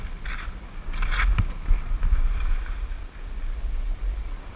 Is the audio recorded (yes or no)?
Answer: yes